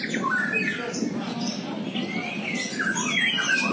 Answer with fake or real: real